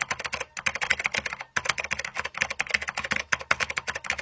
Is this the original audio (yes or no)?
yes